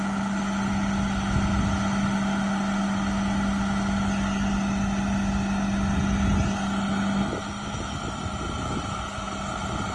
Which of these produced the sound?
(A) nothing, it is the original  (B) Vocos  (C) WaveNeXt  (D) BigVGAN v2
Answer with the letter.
A